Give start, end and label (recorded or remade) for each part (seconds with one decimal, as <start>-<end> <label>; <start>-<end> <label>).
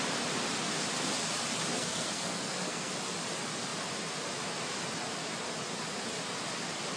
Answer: 0.0-1.7 recorded; 1.7-2.9 remade; 2.9-7.0 recorded